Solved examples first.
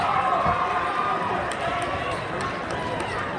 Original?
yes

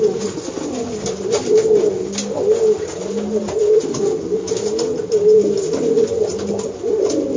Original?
yes